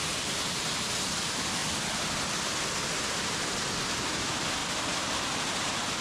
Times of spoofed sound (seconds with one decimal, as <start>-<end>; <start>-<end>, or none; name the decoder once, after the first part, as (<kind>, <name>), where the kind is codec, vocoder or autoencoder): 4.6-6.0 (vocoder, BigVGAN v2)